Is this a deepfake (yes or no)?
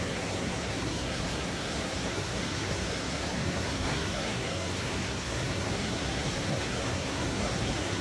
yes